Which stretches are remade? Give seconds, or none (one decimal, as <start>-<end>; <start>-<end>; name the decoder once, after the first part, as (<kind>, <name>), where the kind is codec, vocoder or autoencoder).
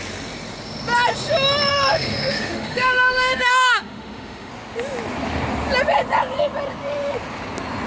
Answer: 1.7-4.5 (autoencoder, DAC-VAE)